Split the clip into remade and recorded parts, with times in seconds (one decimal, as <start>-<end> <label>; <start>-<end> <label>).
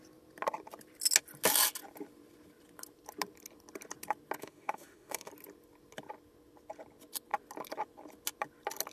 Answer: 0.0-4.4 recorded; 4.4-5.3 remade; 5.3-8.9 recorded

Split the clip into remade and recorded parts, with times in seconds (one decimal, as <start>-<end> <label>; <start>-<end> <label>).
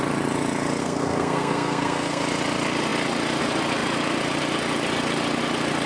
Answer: 0.0-0.8 recorded; 0.8-2.2 remade; 2.2-5.9 recorded